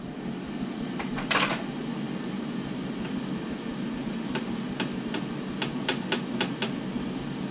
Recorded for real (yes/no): yes